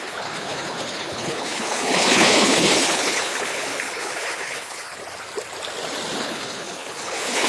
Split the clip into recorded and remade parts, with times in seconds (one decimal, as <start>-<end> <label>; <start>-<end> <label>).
0.0-5.0 remade; 5.0-6.2 recorded; 6.2-7.5 remade